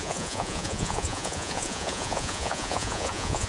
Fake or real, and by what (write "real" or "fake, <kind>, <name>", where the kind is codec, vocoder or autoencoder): fake, vocoder, Vocos